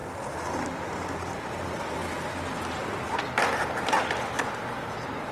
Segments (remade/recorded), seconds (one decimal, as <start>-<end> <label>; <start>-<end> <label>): 0.0-0.6 recorded; 0.6-2.0 remade; 2.0-4.8 recorded; 4.8-5.3 remade